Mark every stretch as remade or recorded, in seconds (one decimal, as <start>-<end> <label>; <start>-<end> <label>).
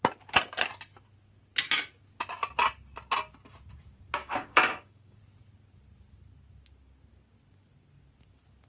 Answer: 0.0-4.2 recorded; 4.2-5.2 remade; 5.2-8.7 recorded